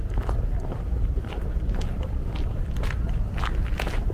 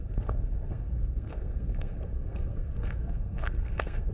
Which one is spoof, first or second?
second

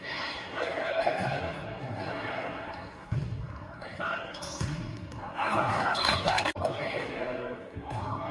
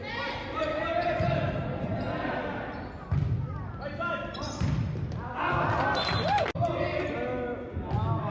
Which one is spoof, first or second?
first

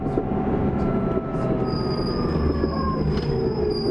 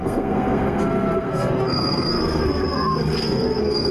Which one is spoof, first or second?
second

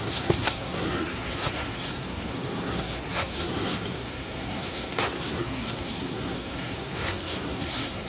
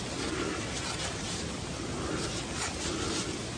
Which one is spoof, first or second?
first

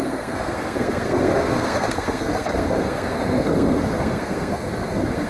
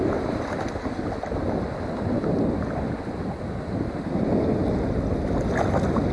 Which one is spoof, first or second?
first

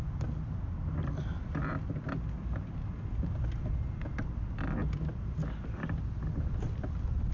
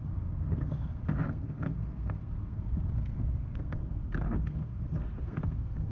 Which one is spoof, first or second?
second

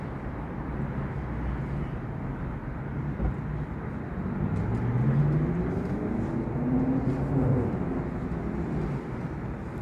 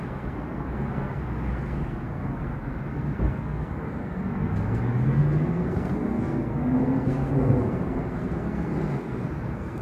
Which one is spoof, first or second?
second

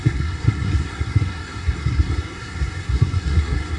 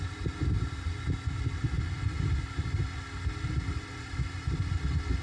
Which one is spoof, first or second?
first